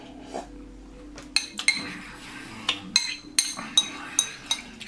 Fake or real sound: real